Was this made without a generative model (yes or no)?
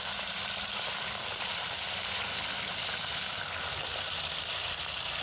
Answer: no